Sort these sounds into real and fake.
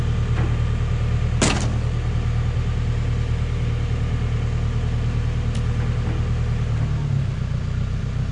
real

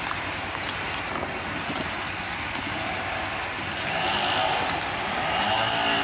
real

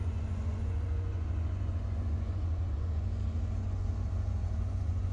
fake